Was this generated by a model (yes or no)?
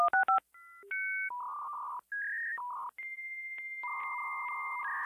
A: no